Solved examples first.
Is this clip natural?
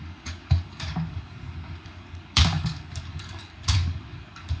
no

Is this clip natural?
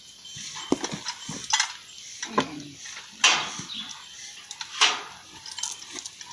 yes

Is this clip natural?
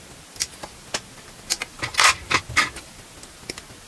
yes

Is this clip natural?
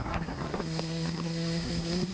no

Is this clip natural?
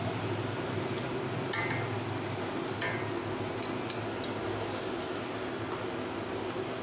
yes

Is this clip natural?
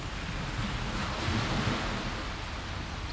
yes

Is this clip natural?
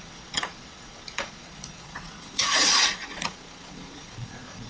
no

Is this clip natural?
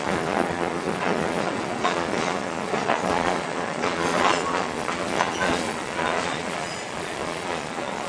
no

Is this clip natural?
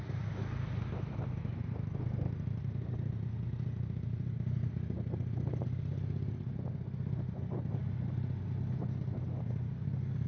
yes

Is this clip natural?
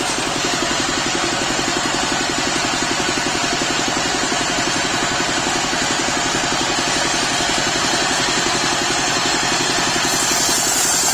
yes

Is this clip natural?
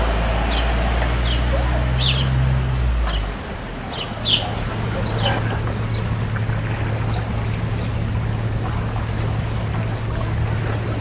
yes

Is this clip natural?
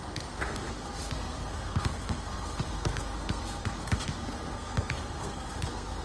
no